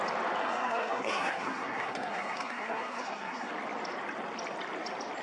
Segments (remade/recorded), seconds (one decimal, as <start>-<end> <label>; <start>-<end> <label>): 0.0-0.4 recorded; 0.4-3.5 remade; 3.5-5.2 recorded

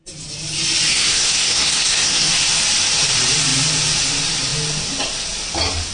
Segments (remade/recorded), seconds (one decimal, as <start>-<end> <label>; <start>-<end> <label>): 0.0-0.9 recorded; 0.9-2.3 remade; 2.3-5.9 recorded

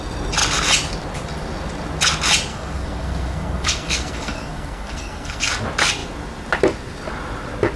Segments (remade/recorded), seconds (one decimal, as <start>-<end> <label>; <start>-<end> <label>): 0.0-2.5 recorded; 2.5-5.5 remade; 5.5-7.8 recorded

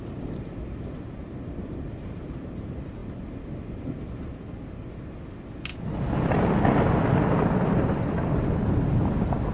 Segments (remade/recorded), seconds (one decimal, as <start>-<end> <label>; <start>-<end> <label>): 0.0-9.5 recorded